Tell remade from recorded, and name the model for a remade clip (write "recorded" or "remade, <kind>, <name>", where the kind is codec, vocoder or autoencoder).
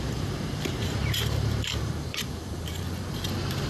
remade, vocoder, BigVGAN v2